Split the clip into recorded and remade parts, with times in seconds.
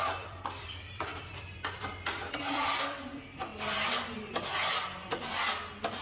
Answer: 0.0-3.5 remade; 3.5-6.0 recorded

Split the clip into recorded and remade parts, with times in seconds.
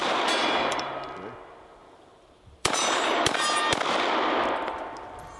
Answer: 0.0-0.9 remade; 0.9-1.8 recorded; 1.8-3.6 remade; 3.6-5.4 recorded